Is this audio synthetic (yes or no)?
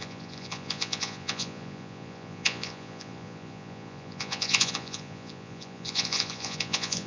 yes